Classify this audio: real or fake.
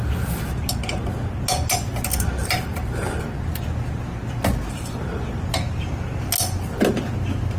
real